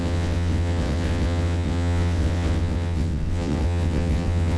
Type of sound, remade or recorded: remade